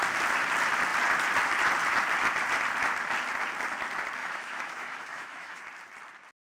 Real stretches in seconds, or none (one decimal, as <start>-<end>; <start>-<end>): 0.0-4.2; 5.6-6.5